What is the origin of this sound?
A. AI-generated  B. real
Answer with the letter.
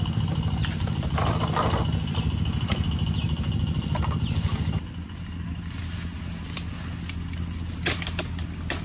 B